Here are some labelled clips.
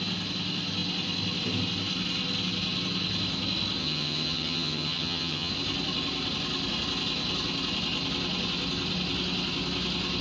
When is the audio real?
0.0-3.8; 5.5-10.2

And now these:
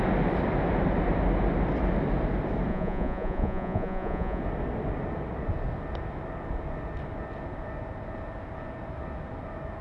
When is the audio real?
0.0-2.7; 4.4-9.8

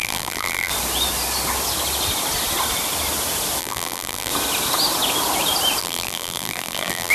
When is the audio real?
0.7-3.6; 4.3-5.8

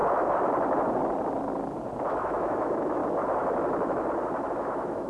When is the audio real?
0.0-2.1; 3.0-4.5

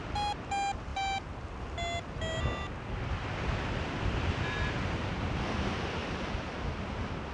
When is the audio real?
0.0-7.3